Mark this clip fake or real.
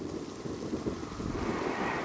real